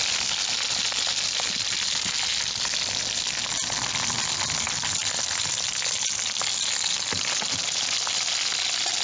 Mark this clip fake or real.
real